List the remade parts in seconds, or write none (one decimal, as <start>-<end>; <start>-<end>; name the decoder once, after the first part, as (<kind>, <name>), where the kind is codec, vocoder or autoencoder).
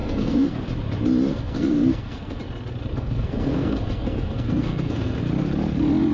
0.0-0.6 (codec, SNAC); 1.3-2.4; 2.9-5.2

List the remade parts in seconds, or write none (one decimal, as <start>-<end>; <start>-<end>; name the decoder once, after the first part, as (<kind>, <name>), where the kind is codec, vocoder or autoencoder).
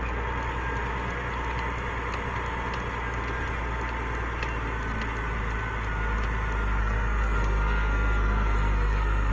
6.8-9.3 (codec, SNAC)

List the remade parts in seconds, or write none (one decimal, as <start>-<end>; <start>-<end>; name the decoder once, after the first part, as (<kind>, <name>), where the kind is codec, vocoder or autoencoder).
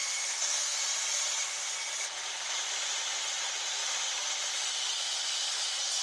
0.0-0.8 (codec, SNAC)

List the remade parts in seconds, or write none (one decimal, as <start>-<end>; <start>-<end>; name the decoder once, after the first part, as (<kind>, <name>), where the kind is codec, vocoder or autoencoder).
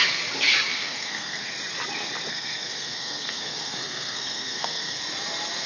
0.7-1.5 (codec, SNAC); 2.3-5.0